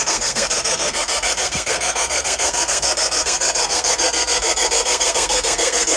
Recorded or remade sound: remade